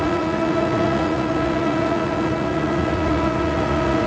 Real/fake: fake